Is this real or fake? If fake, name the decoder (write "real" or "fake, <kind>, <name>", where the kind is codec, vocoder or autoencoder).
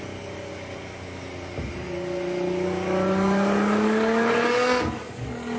fake, codec, DAC